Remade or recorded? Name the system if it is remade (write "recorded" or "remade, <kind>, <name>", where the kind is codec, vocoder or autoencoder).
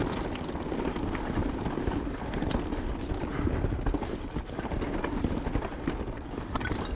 recorded